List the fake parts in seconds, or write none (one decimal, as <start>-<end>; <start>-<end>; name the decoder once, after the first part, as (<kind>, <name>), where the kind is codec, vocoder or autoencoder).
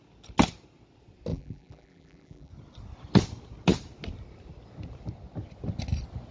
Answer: 1.3-2.5 (vocoder, BigVGAN v2)